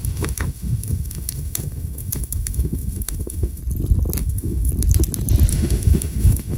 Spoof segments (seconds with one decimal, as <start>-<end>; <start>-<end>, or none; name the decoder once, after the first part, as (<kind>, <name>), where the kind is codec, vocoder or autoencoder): 0.0-3.6 (autoencoder, DAC-VAE); 4.2-4.7; 5.5-6.6